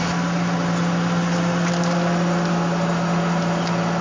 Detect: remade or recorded recorded